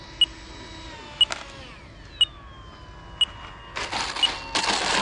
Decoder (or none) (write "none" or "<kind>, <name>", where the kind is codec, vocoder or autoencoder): none